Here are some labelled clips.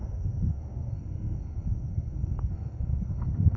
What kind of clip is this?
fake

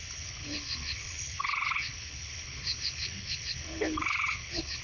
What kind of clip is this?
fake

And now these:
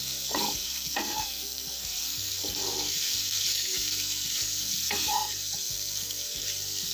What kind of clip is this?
fake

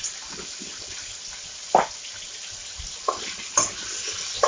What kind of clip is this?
real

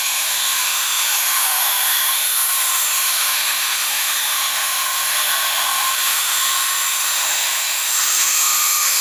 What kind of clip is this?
fake